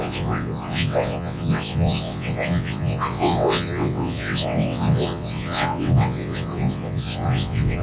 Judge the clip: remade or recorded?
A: remade